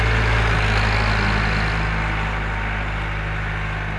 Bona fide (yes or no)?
yes